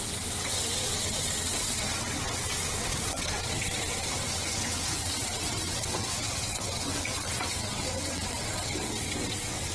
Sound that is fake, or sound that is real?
fake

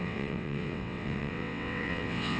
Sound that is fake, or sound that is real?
fake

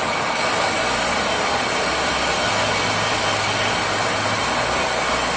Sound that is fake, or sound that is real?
real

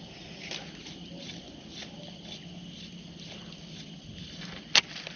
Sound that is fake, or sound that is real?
real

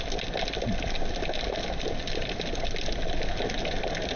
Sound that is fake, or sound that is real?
real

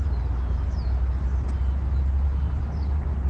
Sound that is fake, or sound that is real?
real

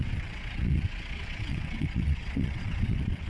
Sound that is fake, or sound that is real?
fake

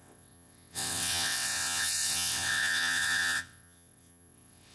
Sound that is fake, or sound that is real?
fake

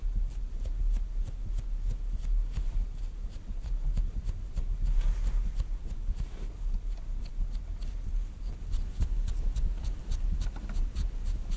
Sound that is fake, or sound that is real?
real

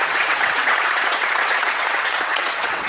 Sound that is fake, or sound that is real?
fake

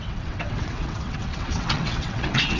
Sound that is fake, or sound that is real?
fake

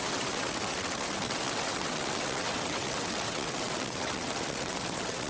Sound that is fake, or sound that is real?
fake